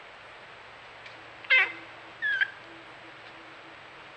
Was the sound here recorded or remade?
recorded